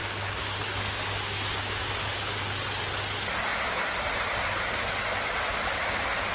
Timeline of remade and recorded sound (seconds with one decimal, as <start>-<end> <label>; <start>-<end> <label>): 0.0-2.0 remade; 2.0-6.3 recorded